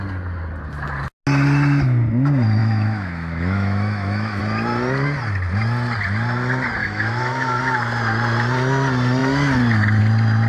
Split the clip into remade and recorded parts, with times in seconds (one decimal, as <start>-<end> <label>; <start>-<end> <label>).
0.0-2.6 recorded; 2.6-4.4 remade; 4.4-6.8 recorded; 6.8-7.6 remade; 7.6-10.5 recorded